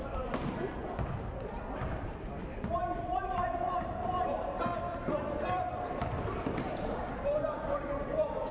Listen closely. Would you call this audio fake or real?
fake